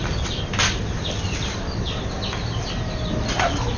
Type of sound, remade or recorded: recorded